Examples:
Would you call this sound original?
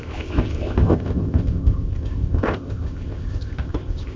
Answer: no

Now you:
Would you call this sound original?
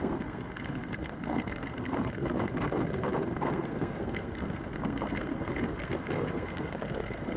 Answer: no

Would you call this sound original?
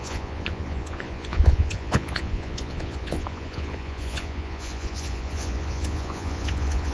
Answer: no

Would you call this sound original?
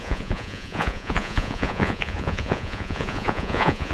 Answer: no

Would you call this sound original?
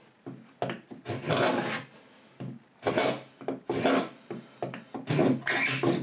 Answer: yes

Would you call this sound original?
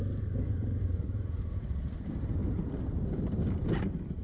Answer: yes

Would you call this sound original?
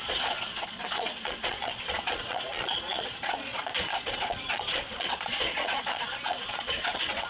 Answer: no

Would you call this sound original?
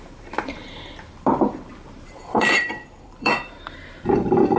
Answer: no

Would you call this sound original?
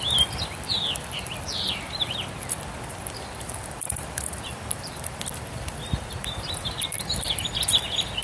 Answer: no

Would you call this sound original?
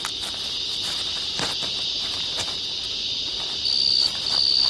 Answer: yes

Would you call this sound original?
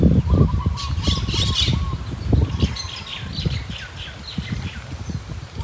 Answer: yes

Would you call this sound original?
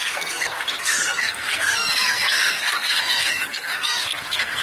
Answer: no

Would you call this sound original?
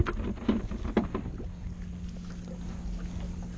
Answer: yes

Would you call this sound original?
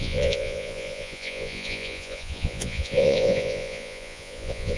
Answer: no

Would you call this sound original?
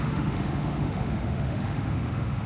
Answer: no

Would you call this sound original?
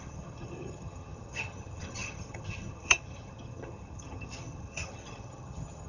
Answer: no